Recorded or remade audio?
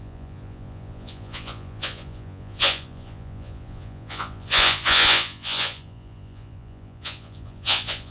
remade